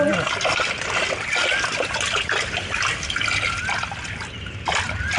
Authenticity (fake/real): real